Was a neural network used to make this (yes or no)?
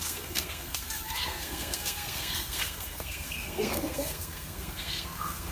yes